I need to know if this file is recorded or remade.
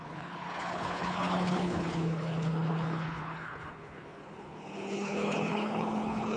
remade